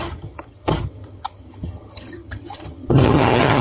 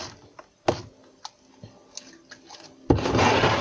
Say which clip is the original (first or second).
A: second